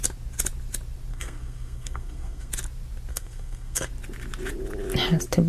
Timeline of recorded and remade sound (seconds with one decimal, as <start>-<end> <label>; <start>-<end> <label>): 0.0-1.1 recorded; 1.1-2.5 remade; 2.5-3.1 recorded; 3.1-3.9 remade; 3.9-5.5 recorded